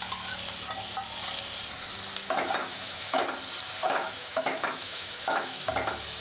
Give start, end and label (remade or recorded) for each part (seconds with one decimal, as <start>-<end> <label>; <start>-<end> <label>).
0.0-2.6 recorded; 2.6-3.2 remade; 3.2-3.8 recorded; 3.8-5.7 remade; 5.7-6.2 recorded